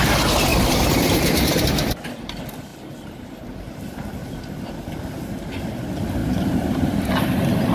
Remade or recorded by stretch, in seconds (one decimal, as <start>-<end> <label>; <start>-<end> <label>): 0.0-0.5 recorded; 0.5-1.6 remade; 1.6-6.2 recorded; 6.2-7.2 remade; 7.2-7.7 recorded